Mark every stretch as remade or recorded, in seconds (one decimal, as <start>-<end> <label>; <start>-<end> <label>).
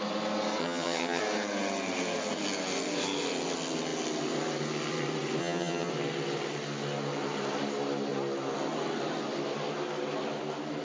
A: 0.0-0.6 recorded; 0.6-1.2 remade; 1.2-5.4 recorded; 5.4-5.9 remade; 5.9-10.8 recorded